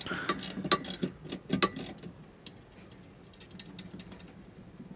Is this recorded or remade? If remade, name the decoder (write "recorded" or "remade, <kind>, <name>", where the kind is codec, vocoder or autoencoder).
recorded